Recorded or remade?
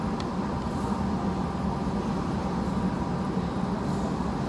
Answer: recorded